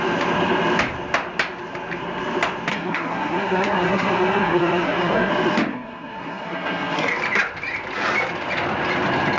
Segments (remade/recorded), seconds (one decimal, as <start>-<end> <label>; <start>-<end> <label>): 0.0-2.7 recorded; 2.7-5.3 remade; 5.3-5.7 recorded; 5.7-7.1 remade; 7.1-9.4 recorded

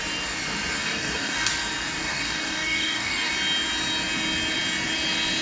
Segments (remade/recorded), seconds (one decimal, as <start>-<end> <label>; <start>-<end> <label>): 0.0-0.8 recorded; 0.8-1.5 remade; 1.5-2.0 recorded; 2.0-3.3 remade; 3.3-5.4 recorded

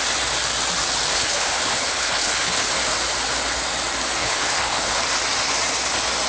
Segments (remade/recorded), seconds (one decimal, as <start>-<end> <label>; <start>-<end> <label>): 0.0-1.1 recorded; 1.1-2.7 remade; 2.7-4.2 recorded; 4.2-5.0 remade; 5.0-6.3 recorded

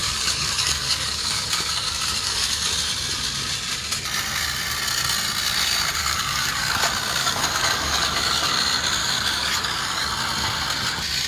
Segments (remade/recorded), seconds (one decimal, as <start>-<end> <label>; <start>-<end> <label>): 0.0-2.7 remade; 2.7-6.0 recorded; 6.0-6.8 remade; 6.8-7.2 recorded; 7.2-8.5 remade; 8.5-9.0 recorded; 9.0-10.1 remade; 10.1-11.3 recorded

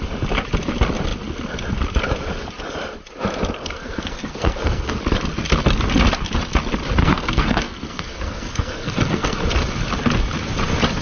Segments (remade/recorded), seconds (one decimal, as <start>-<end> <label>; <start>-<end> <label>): 0.0-3.6 recorded; 3.6-5.0 remade; 5.0-7.0 recorded; 7.0-9.4 remade; 9.4-11.0 recorded

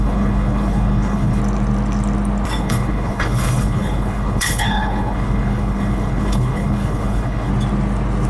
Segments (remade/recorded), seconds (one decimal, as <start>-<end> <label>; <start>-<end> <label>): 0.0-1.4 remade; 1.4-2.6 recorded; 2.6-7.5 remade; 7.5-8.3 recorded

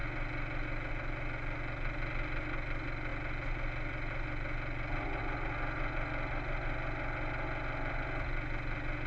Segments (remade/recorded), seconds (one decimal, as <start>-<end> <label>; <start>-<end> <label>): 0.0-9.1 recorded

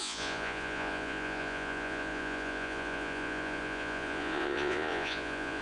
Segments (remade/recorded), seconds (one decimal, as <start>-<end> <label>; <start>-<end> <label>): 0.0-5.6 remade